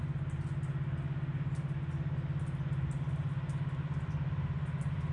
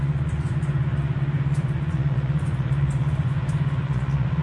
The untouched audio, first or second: first